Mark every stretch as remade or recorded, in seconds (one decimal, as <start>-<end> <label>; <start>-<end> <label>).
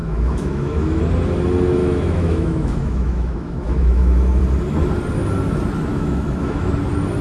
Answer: 0.0-1.0 remade; 1.0-1.8 recorded; 1.8-4.4 remade; 4.4-5.9 recorded; 5.9-6.7 remade; 6.7-7.2 recorded